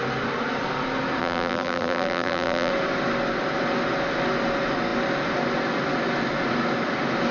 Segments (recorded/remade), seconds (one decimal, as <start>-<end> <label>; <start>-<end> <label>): 0.0-1.2 recorded; 1.2-2.7 remade; 2.7-7.3 recorded